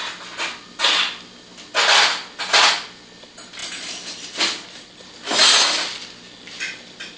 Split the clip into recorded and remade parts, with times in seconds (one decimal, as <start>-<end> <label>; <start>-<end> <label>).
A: 0.0-7.2 recorded